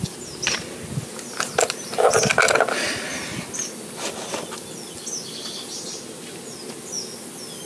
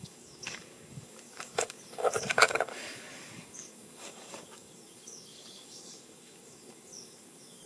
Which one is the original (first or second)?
first